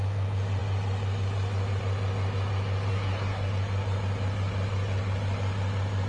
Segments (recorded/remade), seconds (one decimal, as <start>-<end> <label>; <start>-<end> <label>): 0.0-2.9 recorded; 2.9-3.5 remade; 3.5-6.1 recorded